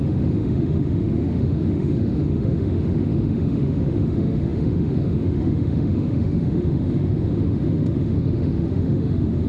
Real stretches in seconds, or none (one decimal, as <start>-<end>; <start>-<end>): none